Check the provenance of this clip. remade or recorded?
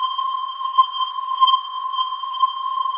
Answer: remade